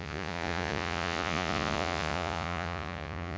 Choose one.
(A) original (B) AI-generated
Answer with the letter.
B